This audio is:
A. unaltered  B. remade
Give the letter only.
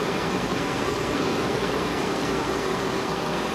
B